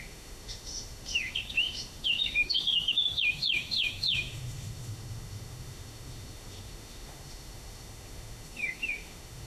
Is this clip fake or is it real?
fake